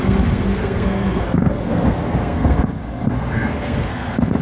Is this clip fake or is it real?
fake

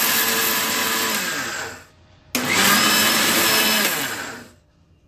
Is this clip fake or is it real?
real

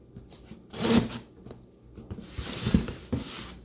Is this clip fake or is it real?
real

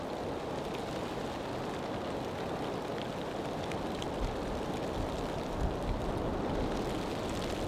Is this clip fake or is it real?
real